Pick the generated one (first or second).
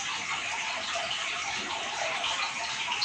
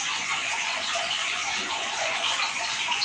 second